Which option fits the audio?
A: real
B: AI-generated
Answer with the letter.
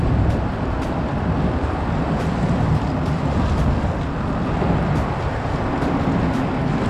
A